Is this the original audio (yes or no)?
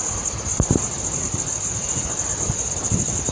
yes